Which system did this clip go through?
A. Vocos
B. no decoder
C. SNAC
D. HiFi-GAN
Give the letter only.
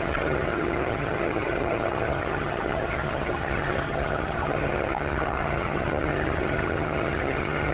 D